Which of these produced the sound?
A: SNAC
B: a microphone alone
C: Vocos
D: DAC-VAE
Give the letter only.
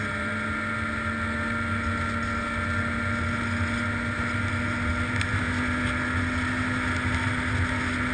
B